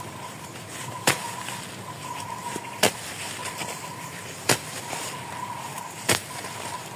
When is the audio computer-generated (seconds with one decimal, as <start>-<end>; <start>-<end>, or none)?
0.0-3.4; 4.1-7.0